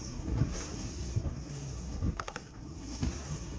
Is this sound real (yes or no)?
no